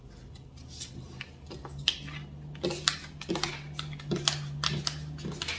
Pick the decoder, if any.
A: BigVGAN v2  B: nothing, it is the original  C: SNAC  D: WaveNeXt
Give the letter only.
B